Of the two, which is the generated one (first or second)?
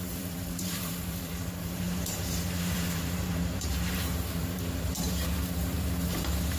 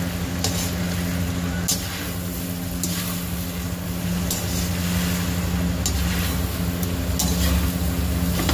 first